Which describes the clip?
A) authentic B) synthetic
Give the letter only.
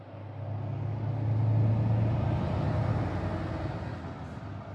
A